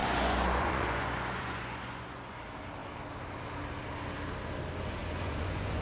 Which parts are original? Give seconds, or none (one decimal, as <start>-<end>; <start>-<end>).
2.4-5.0